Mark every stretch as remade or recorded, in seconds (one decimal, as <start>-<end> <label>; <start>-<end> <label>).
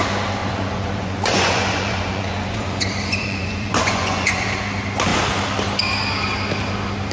0.0-0.4 recorded; 0.4-4.6 remade; 4.6-7.1 recorded